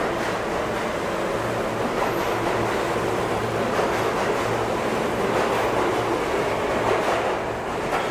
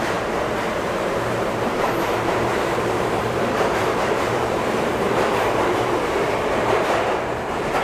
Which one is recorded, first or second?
first